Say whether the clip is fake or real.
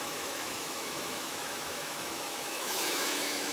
fake